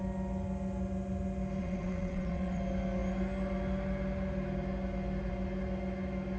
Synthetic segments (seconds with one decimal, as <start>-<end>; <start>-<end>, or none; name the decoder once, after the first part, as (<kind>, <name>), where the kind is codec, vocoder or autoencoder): 1.6-2.6 (vocoder, WaveNeXt)